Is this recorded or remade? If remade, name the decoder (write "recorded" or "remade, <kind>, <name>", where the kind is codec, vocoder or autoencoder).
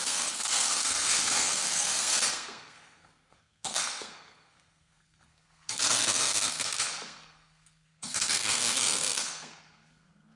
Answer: remade, codec, SNAC